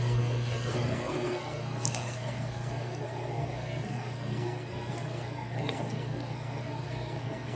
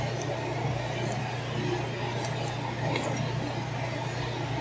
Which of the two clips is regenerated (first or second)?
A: first